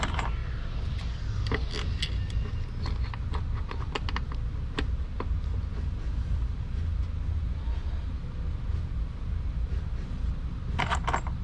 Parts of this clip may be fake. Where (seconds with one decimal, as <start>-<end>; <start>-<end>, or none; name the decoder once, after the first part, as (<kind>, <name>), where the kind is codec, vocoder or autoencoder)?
none